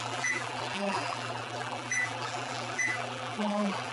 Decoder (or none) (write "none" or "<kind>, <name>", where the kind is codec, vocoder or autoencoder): vocoder, BigVGAN v2